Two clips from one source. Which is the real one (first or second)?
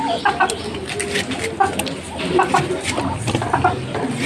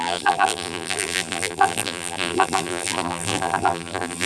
first